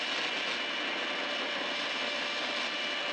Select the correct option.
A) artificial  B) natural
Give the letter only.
B